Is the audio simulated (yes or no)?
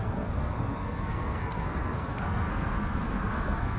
yes